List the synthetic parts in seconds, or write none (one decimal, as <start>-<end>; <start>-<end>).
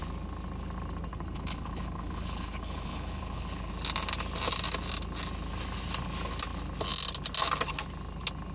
1.1-3.7